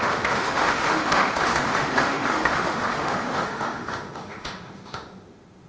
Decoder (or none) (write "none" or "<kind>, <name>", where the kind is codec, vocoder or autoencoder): autoencoder, DAC-VAE